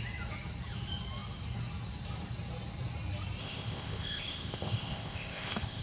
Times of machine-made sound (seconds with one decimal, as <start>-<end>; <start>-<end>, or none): 3.4-5.8